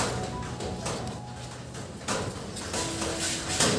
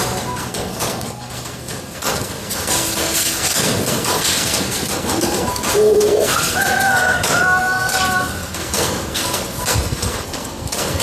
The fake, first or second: second